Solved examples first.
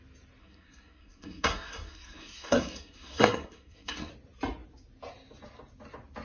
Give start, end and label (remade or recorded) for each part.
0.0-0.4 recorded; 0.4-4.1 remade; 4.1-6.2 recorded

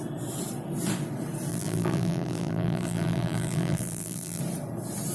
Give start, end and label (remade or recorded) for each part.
0.0-1.5 recorded; 1.5-4.4 remade; 4.4-5.1 recorded

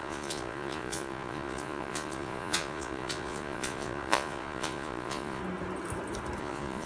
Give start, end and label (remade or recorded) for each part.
0.0-5.4 remade; 5.4-6.4 recorded; 6.4-6.9 remade